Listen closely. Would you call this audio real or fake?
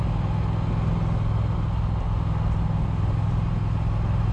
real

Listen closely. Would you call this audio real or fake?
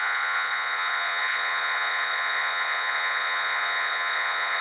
fake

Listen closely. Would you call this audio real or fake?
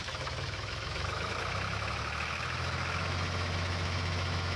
fake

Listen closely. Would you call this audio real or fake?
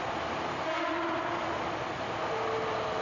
real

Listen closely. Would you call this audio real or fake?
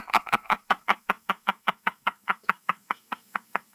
fake